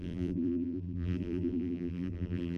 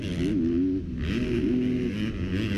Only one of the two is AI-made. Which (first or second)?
first